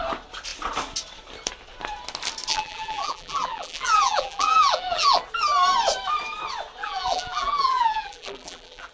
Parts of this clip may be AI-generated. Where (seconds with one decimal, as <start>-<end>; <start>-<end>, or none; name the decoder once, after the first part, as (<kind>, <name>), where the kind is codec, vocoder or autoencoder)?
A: 2.5-5.2 (vocoder, BigVGAN v2); 6.8-8.9